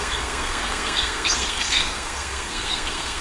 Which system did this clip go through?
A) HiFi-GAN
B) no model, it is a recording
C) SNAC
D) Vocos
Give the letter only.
C